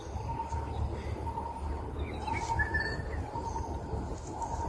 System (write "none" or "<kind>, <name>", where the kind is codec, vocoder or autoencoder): none